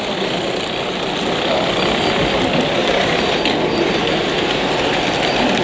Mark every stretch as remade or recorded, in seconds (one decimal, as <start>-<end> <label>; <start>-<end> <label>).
0.0-2.8 recorded; 2.8-3.4 remade; 3.4-5.6 recorded